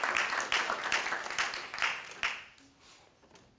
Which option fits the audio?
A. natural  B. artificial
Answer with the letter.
A